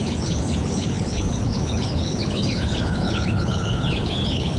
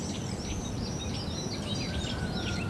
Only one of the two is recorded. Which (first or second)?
second